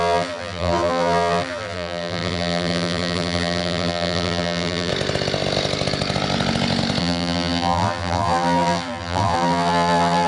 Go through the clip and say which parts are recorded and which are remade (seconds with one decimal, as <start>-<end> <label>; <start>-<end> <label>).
0.0-4.9 remade; 4.9-7.0 recorded; 7.0-10.3 remade